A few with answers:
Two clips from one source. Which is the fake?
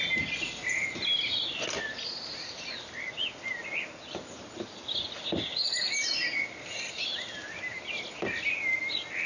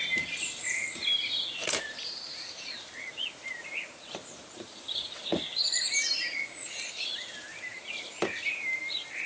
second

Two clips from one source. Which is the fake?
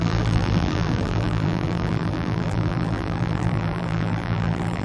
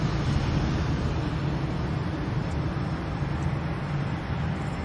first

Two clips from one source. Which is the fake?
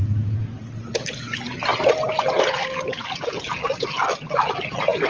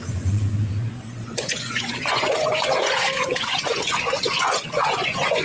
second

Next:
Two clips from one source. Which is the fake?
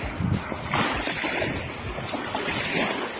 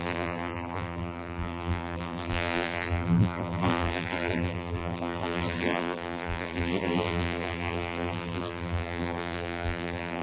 second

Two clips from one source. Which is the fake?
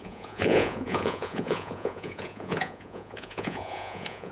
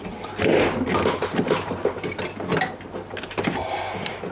first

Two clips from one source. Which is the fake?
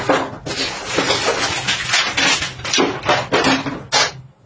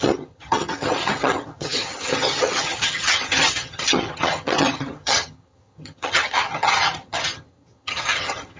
second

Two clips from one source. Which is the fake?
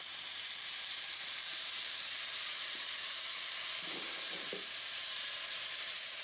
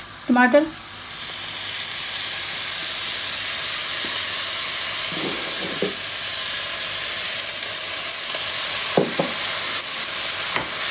first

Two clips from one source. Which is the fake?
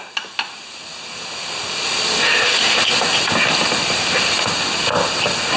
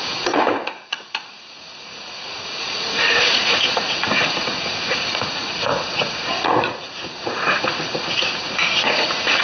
second